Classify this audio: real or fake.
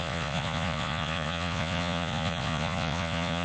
fake